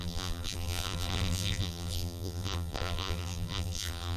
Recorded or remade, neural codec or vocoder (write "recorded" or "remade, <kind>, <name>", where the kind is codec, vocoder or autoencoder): remade, vocoder, BigVGAN v2